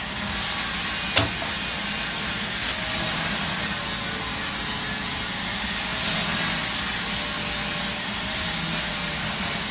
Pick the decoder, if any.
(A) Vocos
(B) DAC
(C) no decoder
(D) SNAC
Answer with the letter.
C